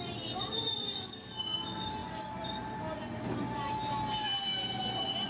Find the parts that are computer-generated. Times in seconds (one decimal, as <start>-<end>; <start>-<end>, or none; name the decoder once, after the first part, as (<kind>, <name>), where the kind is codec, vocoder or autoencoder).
none